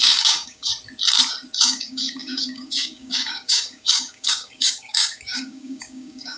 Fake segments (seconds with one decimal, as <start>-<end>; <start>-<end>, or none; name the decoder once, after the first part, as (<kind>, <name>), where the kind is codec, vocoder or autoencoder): 0.0-0.7 (codec, DAC); 1.6-6.4